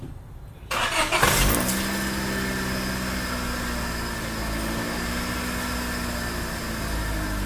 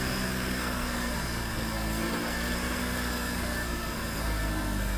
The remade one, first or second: second